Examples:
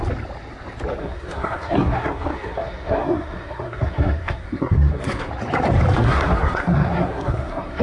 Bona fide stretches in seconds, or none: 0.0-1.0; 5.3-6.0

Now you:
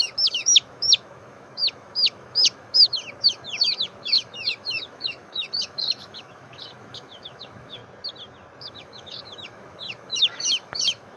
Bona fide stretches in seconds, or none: 7.8-8.6

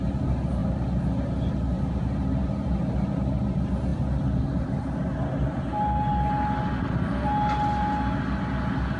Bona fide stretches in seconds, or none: 0.0-9.0

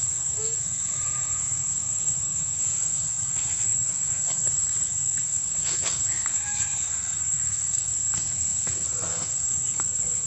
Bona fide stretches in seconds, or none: none